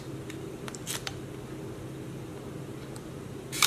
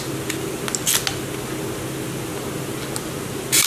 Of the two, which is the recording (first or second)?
second